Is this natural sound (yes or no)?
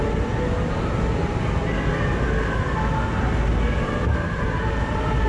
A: yes